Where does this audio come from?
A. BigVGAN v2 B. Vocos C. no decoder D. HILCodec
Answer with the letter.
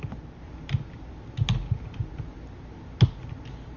C